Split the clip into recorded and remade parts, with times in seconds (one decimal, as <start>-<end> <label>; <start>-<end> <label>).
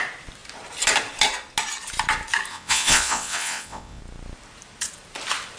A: 0.0-2.5 recorded; 2.5-4.0 remade; 4.0-5.6 recorded